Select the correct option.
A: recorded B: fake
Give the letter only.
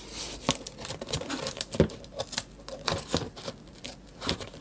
A